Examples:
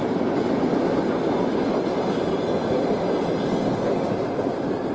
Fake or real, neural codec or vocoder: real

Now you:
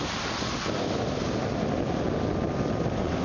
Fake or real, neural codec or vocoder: real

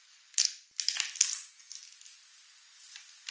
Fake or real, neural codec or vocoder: real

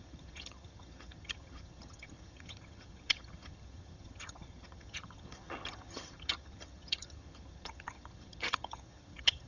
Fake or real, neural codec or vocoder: fake, vocoder, HiFi-GAN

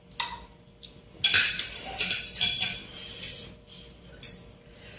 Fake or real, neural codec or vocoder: real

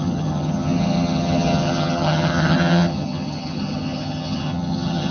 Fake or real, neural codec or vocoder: fake, vocoder, HiFi-GAN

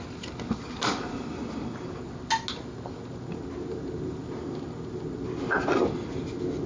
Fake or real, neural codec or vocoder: real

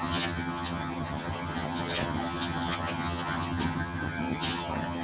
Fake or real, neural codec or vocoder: fake, vocoder, HiFi-GAN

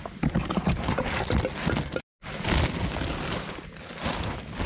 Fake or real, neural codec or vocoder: real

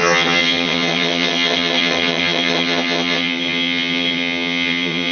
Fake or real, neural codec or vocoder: fake, vocoder, HiFi-GAN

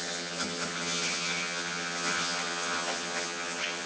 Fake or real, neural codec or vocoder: fake, vocoder, HiFi-GAN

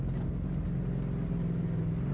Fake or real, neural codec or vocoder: real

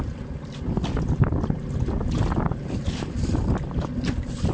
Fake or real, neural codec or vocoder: real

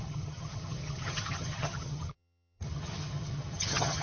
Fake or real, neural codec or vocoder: fake, vocoder, HiFi-GAN